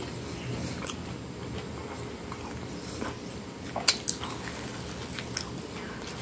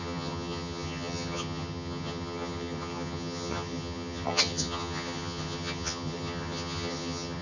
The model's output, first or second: second